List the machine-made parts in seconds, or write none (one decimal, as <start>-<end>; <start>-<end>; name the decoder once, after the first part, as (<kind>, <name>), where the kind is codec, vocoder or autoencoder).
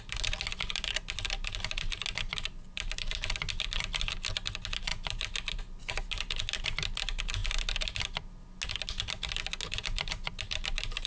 none